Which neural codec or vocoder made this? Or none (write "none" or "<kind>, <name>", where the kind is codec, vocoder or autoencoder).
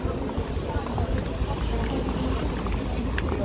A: none